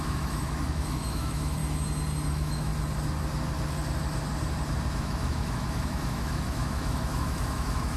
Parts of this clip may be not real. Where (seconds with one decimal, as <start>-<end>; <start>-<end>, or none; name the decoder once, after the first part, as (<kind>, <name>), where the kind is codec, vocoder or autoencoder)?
0.0-1.6 (autoencoder, DAC-VAE); 2.3-2.7; 4.9-8.0